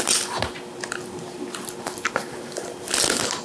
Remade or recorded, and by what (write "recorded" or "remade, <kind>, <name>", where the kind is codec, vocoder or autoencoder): recorded